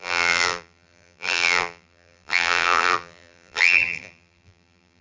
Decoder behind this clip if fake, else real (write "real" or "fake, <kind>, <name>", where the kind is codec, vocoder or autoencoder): fake, vocoder, BigVGAN v2